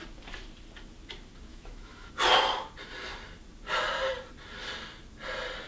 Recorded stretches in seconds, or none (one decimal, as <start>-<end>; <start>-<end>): 0.0-1.5; 2.1-5.7